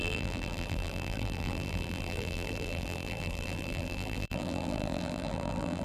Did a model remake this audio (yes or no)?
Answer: yes